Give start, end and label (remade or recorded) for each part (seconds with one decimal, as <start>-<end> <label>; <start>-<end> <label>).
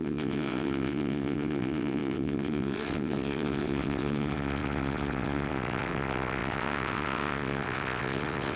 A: 0.0-8.6 remade